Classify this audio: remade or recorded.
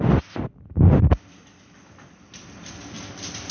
remade